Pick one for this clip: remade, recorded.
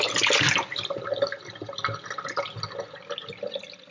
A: recorded